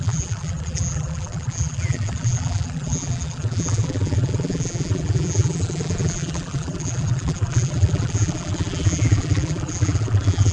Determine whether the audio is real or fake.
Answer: fake